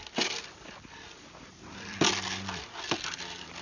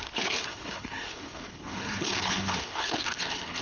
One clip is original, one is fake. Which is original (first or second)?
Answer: first